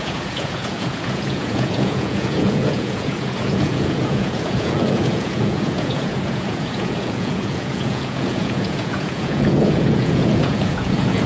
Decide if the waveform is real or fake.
fake